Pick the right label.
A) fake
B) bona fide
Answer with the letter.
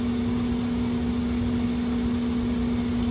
B